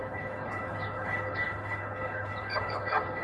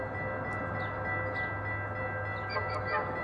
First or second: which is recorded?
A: second